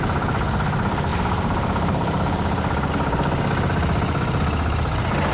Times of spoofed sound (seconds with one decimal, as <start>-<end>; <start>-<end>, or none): 1.1-2.9